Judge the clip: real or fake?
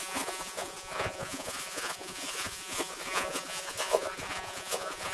fake